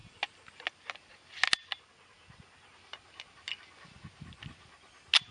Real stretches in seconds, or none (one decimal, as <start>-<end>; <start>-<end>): 0.0-5.3